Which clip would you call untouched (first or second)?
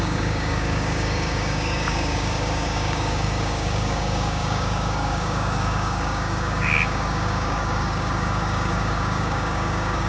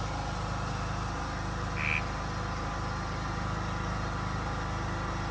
second